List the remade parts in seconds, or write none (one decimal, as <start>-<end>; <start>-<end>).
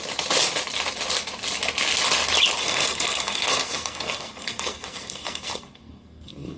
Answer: 2.6-6.6